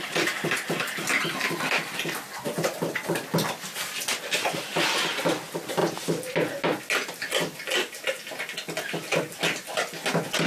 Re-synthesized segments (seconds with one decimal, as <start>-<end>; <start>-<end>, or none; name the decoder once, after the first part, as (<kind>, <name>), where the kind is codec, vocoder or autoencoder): none